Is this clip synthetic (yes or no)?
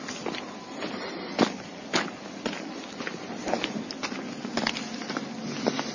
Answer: no